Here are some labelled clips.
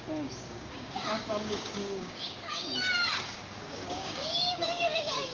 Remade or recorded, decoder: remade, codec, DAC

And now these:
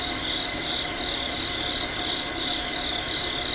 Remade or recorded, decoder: recorded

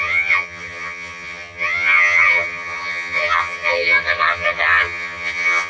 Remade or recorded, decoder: remade, vocoder, HiFi-GAN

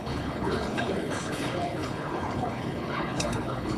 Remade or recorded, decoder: remade, codec, HILCodec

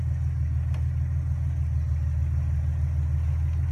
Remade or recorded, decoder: recorded